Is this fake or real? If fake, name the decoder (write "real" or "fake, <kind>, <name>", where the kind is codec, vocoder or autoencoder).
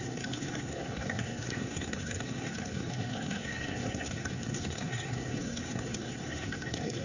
fake, codec, SNAC